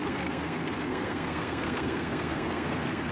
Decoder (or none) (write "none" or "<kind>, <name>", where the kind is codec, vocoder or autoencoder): codec, SNAC